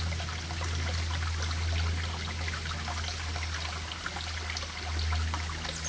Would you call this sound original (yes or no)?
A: yes